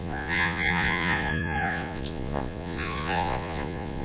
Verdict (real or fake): fake